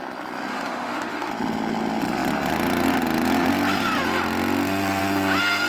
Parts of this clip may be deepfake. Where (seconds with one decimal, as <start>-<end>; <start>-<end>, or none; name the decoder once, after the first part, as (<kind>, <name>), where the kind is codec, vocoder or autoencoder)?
0.5-1.3 (autoencoder, DAC-VAE)